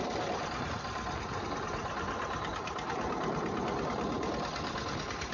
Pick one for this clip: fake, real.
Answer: real